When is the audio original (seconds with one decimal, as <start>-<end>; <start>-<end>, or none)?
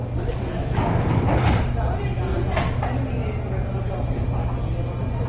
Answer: 0.0-5.3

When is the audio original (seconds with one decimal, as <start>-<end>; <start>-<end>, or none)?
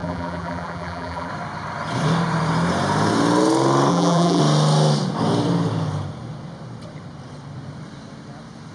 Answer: 1.3-3.9; 4.4-8.7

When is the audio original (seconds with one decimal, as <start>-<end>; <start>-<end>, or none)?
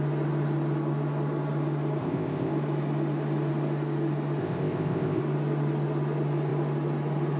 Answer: 0.0-2.0; 2.5-4.4; 5.2-7.4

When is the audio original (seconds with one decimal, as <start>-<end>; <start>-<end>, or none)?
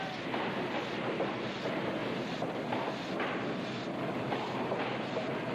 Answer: 0.0-5.5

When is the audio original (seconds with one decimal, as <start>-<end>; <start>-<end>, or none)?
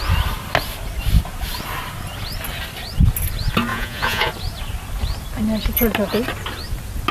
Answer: 0.0-3.7; 4.3-7.1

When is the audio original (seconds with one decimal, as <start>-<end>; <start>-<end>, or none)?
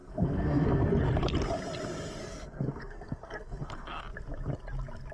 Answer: 0.9-2.2; 4.0-5.1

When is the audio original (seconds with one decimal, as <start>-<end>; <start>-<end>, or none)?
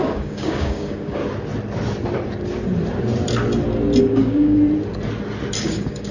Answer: 1.2-4.0; 4.6-5.6